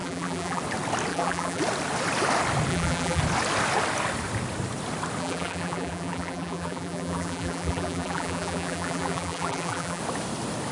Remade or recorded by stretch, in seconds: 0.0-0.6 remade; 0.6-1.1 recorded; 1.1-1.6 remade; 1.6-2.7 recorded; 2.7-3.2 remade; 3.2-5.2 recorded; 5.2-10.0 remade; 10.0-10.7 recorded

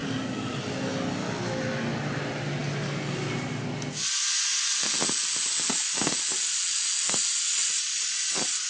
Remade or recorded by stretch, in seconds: 0.0-8.7 recorded

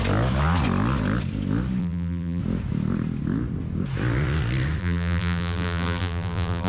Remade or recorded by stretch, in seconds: 0.0-1.8 recorded; 1.8-2.4 remade; 2.4-4.8 recorded; 4.8-6.7 remade

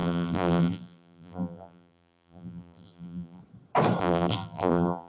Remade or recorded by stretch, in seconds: 0.0-3.4 remade; 3.4-4.0 recorded; 4.0-5.1 remade